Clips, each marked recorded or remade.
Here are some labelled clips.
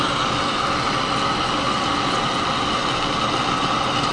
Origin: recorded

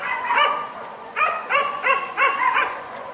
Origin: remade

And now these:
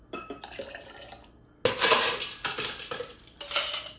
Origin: recorded